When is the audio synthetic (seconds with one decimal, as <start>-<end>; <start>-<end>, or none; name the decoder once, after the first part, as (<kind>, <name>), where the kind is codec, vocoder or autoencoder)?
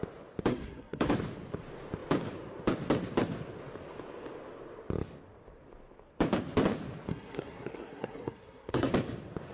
0.5-1.1 (codec, SNAC); 7.1-8.9